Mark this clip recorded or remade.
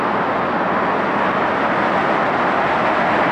recorded